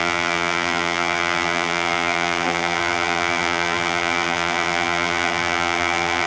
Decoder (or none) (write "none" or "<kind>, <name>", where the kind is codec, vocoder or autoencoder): vocoder, BigVGAN v2